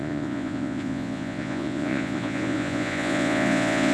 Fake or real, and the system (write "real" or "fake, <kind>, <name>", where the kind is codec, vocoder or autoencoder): fake, vocoder, Vocos